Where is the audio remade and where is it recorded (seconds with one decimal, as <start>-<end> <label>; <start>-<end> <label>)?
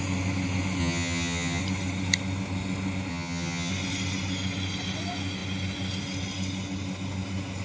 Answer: 0.0-0.8 recorded; 0.8-1.6 remade; 1.6-3.1 recorded; 3.1-3.7 remade; 3.7-7.6 recorded